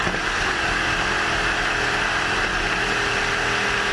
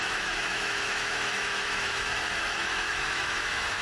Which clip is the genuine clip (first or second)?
first